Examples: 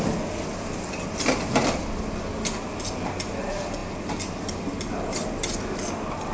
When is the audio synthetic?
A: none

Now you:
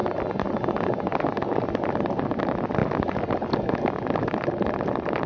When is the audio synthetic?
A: none

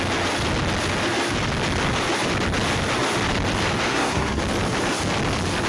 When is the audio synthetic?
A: 3.9-4.4 (codec, SNAC)

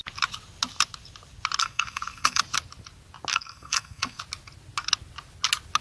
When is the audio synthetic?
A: 1.6-2.4 (codec, SNAC); 3.3-4.2

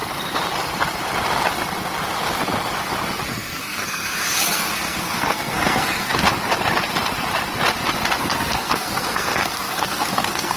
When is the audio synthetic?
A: 3.3-6.1 (codec, SNAC); 8.2-10.6